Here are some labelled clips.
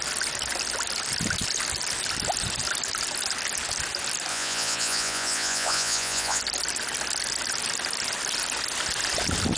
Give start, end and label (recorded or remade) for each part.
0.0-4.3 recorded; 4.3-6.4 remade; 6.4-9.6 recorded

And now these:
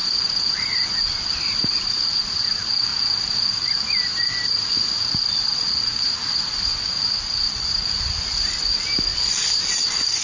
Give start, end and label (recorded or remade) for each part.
0.0-10.2 recorded

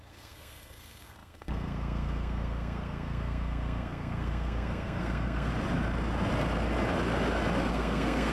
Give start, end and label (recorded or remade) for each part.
0.0-5.5 remade; 5.5-7.7 recorded; 7.7-8.3 remade

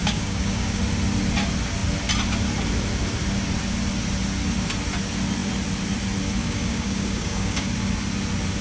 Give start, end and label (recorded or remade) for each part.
0.0-0.8 remade; 0.8-6.4 recorded; 6.4-7.7 remade; 7.7-8.6 recorded

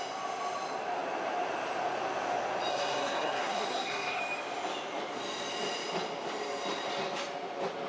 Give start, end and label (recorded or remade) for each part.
0.0-2.7 recorded; 2.7-4.2 remade; 4.2-7.9 recorded

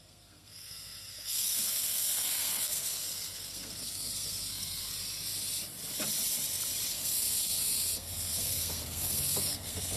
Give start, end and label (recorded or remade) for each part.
0.0-5.0 remade; 5.0-6.9 recorded; 6.9-10.0 remade

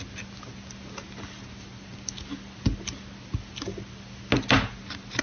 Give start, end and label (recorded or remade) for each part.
0.0-5.2 recorded